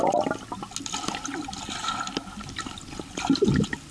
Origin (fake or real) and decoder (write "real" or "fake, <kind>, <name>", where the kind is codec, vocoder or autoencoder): real